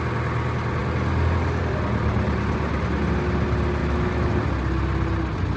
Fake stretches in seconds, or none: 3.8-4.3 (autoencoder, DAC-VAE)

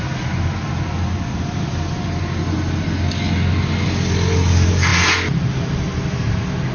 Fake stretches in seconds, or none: none

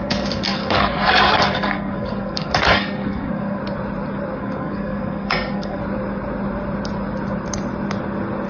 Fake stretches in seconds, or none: 0.0-3.6 (codec, SNAC); 4.4-5.8

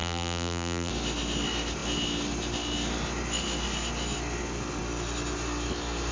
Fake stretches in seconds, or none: 0.0-0.9 (vocoder, BigVGAN v2)

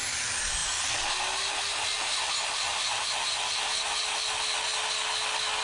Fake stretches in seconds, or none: none

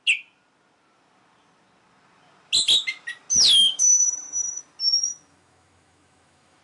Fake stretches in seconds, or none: 3.6-4.6 (autoencoder, DAC-VAE); 5.0-6.6

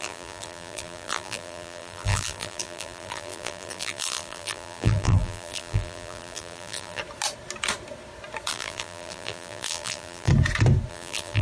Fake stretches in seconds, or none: 0.0-7.0 (vocoder, BigVGAN v2); 8.5-10.3; 10.9-11.4